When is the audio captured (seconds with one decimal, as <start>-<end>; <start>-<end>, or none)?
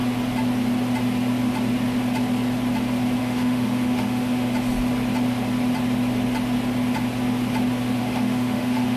0.0-3.2; 4.5-8.0